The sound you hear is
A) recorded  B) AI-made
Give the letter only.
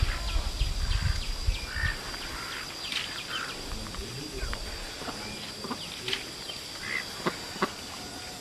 A